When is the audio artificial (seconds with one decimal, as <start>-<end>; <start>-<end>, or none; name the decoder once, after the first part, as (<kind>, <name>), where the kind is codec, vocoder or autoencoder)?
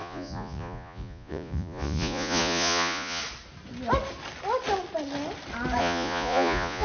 0.0-3.2 (vocoder, Vocos); 5.8-6.8